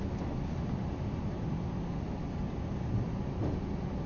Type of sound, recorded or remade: recorded